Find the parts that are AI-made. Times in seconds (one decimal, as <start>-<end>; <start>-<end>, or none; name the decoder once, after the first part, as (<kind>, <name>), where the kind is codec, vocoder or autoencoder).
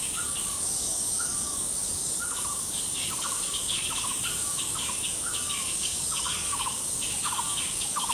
0.0-8.1 (codec, DAC)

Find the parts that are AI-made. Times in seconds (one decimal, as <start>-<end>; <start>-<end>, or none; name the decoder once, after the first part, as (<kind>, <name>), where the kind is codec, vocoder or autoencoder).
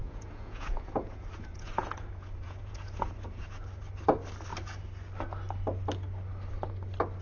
0.0-3.4 (vocoder, Vocos)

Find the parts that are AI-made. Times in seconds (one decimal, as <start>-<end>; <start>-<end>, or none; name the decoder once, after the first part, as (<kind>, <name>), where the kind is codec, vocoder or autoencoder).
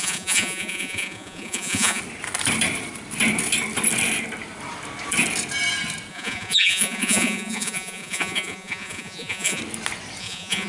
0.0-2.0 (vocoder, Vocos); 6.1-9.6; 10.2-10.7